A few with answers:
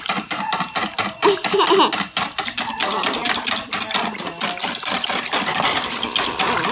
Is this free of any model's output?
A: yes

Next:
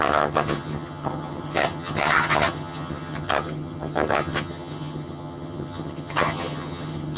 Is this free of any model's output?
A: no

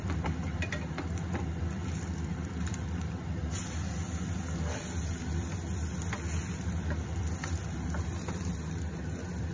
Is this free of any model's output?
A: no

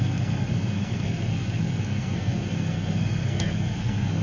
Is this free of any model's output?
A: no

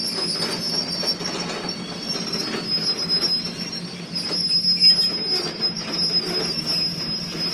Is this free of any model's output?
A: yes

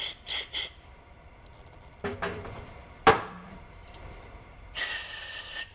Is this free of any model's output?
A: no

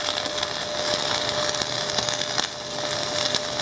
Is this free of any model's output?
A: yes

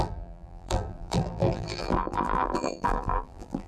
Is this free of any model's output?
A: no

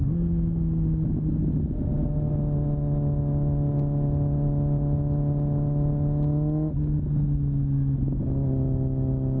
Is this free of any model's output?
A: yes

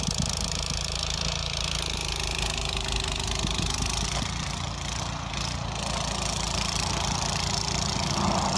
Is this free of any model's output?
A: yes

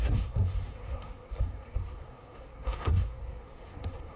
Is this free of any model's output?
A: no